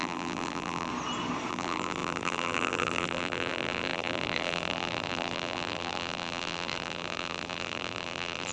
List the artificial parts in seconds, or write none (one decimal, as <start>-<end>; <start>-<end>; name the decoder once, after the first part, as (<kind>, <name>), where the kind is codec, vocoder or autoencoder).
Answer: 0.0-0.9 (vocoder, BigVGAN v2); 1.5-8.5